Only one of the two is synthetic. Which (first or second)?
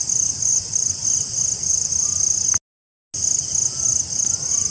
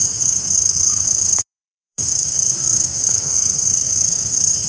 second